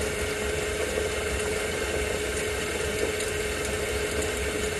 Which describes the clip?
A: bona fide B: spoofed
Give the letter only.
A